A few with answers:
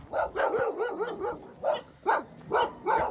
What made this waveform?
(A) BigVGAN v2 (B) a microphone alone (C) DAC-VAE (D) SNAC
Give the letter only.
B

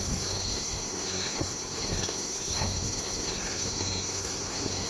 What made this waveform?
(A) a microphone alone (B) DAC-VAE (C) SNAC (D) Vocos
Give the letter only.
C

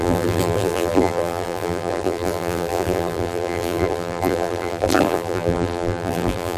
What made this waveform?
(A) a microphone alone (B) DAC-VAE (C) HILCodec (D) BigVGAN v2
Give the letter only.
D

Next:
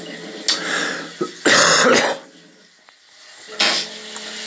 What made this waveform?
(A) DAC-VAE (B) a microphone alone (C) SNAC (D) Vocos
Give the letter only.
B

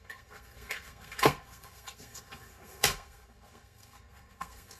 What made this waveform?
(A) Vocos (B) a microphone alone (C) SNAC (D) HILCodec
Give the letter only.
C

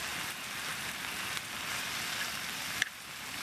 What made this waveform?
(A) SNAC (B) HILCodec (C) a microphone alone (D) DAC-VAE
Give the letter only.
C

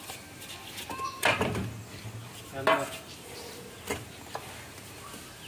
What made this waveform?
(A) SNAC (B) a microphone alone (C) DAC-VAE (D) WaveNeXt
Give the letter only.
B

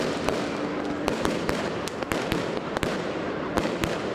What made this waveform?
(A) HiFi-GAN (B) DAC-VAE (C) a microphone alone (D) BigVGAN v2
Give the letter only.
D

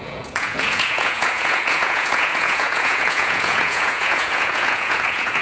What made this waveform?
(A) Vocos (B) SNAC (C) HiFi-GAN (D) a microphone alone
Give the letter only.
A